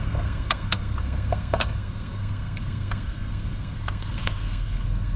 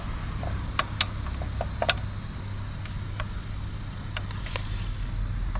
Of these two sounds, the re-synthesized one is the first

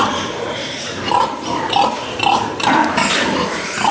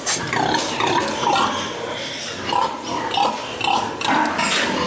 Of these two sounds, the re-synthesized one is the first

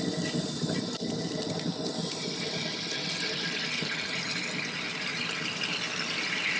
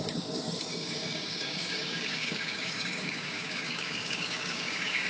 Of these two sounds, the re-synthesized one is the second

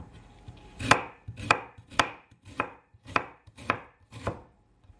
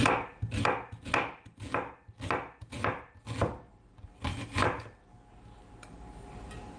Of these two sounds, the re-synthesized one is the first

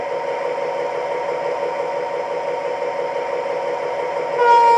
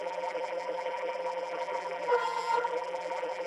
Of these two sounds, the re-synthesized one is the second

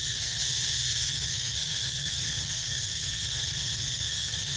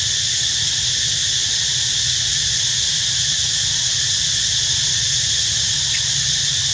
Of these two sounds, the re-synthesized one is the first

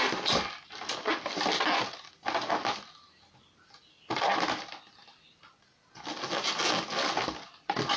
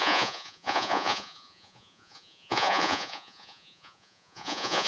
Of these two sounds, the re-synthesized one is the second